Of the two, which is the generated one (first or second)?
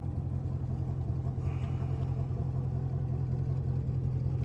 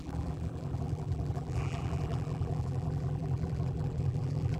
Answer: second